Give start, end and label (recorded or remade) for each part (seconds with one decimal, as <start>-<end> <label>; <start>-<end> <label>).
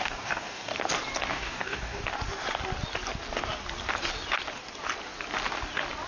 0.0-0.7 remade; 0.7-1.3 recorded; 1.3-2.0 remade; 2.0-6.1 recorded